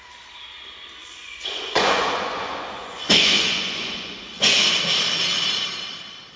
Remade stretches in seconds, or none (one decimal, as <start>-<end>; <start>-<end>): 1.0-4.8